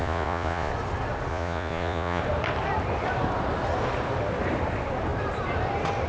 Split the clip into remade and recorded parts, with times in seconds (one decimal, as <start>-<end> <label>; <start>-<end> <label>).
0.0-0.7 remade; 0.7-1.3 recorded; 1.3-2.2 remade; 2.2-6.1 recorded

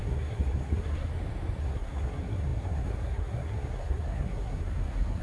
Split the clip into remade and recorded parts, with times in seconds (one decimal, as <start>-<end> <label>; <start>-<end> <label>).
0.0-1.1 remade; 1.1-1.6 recorded; 1.6-5.2 remade

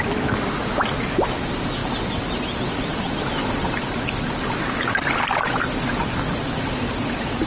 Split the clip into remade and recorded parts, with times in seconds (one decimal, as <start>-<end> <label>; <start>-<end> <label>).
0.0-7.5 recorded

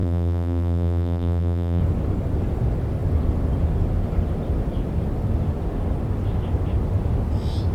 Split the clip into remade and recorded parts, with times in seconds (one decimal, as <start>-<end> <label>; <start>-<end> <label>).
0.0-1.8 remade; 1.8-7.7 recorded

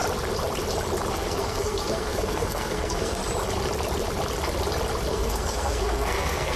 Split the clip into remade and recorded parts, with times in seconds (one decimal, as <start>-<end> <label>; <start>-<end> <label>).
0.0-1.1 recorded; 1.1-3.2 remade; 3.2-5.1 recorded; 5.1-6.6 remade